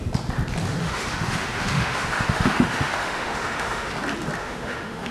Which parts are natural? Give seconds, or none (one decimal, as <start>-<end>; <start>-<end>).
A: 0.0-0.8; 3.9-4.4